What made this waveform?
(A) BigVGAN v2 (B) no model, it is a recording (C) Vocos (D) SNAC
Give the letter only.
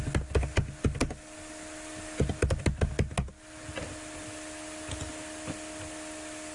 B